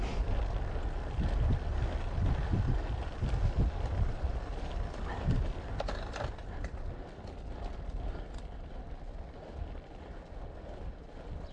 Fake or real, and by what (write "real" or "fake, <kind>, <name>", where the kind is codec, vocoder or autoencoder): real